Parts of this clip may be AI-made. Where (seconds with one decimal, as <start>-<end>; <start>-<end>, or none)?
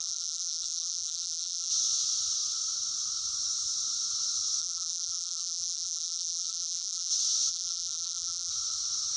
0.0-1.7; 4.6-7.1; 7.5-8.5